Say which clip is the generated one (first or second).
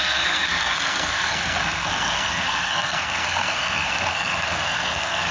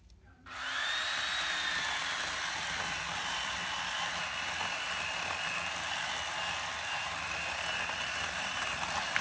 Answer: first